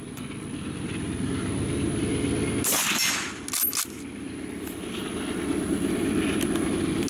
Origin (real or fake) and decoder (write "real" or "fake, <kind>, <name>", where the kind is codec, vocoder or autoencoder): real